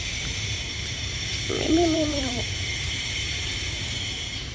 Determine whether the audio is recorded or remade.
remade